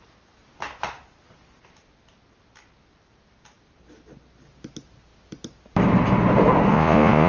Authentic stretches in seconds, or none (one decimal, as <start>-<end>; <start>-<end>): 0.0-6.7